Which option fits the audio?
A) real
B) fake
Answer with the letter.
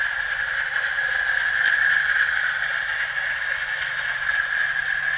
A